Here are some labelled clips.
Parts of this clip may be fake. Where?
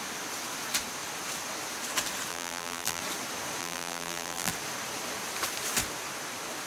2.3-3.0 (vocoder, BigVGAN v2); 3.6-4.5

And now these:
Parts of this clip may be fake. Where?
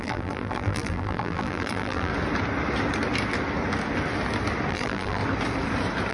0.0-2.1 (vocoder, BigVGAN v2); 4.7-5.2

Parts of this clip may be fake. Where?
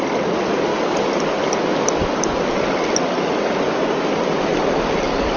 none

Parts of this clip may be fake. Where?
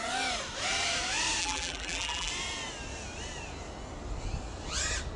1.4-2.3 (vocoder, BigVGAN v2)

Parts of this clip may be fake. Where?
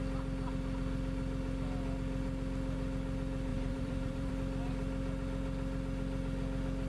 3.5-4.3 (vocoder, BigVGAN v2)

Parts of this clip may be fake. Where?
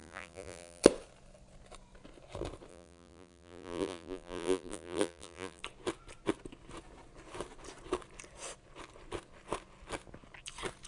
0.0-0.8 (vocoder, BigVGAN v2); 2.7-5.6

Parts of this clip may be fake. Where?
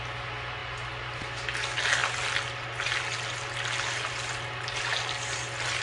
none